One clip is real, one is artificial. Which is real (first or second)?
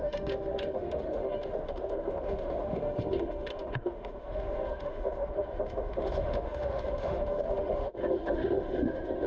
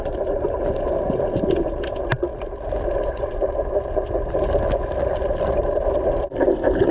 second